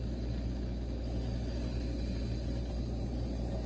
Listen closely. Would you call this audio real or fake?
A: real